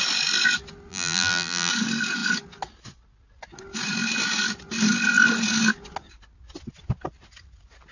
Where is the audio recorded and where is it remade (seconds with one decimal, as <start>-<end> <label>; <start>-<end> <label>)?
0.0-0.9 recorded; 0.9-1.7 remade; 1.7-7.9 recorded